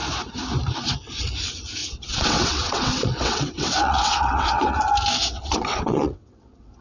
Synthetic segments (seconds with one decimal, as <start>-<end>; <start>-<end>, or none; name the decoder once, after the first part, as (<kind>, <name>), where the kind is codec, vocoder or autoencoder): 1.8-4.8 (vocoder, WaveNeXt); 5.3-6.8